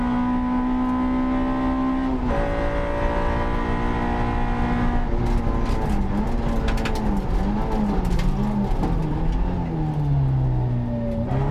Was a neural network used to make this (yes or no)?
no